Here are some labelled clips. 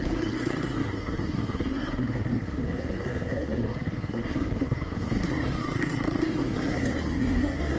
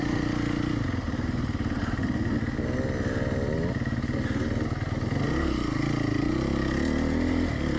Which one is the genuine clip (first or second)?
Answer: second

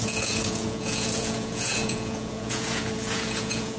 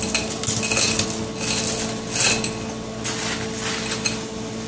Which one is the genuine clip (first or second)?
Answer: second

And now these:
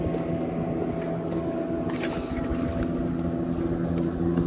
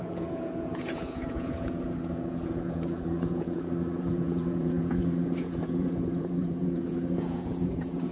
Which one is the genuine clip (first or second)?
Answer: first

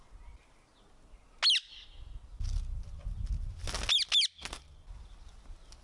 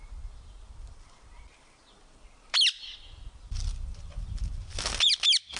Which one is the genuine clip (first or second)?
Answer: first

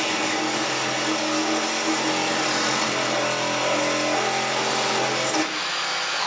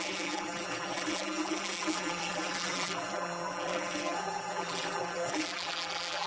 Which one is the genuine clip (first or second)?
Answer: first